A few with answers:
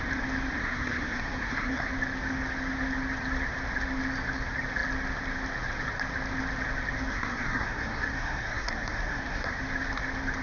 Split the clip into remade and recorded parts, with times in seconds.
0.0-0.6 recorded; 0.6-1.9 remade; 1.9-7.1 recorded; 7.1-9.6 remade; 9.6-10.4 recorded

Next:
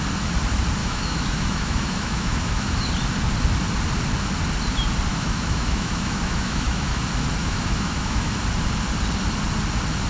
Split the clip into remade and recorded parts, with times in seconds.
0.0-0.8 recorded; 0.8-2.8 remade; 2.8-5.1 recorded; 5.1-7.0 remade; 7.0-7.4 recorded; 7.4-8.3 remade; 8.3-10.1 recorded

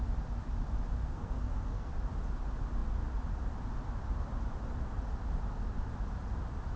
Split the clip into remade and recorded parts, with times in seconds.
0.0-1.0 recorded; 1.0-1.9 remade; 1.9-6.8 recorded

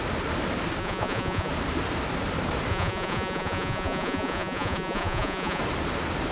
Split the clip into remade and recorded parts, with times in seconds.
0.0-0.8 recorded; 0.8-1.5 remade; 1.5-2.7 recorded; 2.7-5.6 remade; 5.6-6.3 recorded

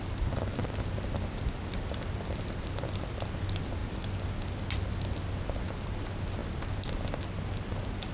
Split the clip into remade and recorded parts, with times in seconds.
0.0-8.1 recorded

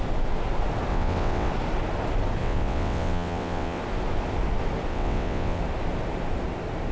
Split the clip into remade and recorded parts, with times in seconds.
0.0-0.9 recorded; 0.9-1.5 remade; 1.5-2.4 recorded; 2.4-3.8 remade; 3.8-4.9 recorded; 4.9-5.6 remade; 5.6-6.9 recorded

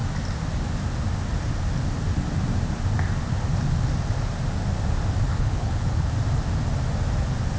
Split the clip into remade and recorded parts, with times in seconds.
0.0-5.3 recorded; 5.3-6.1 remade; 6.1-7.6 recorded